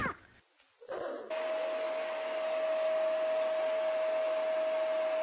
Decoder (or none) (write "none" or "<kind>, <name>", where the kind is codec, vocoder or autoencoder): none